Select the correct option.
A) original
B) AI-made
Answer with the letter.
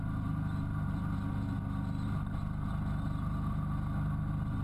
A